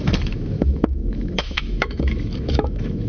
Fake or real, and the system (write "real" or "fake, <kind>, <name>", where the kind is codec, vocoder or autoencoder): fake, autoencoder, DAC-VAE